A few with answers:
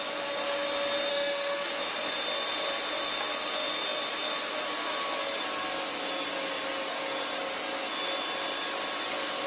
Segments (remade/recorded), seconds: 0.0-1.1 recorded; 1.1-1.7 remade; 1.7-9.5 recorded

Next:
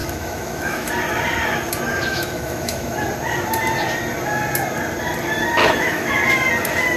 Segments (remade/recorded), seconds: 0.0-0.9 remade; 0.9-2.1 recorded; 2.1-3.0 remade; 3.0-5.6 recorded; 5.6-6.2 remade; 6.2-7.0 recorded

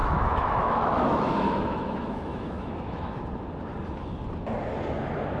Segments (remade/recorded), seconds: 0.0-3.2 remade; 3.2-5.4 recorded

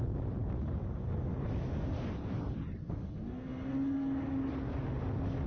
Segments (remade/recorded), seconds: 0.0-5.5 recorded